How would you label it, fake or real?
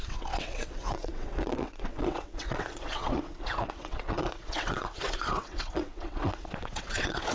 fake